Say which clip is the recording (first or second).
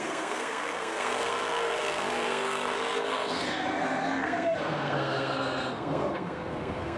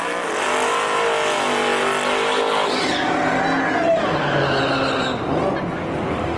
second